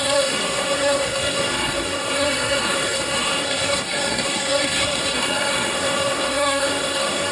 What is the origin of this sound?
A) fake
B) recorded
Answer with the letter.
A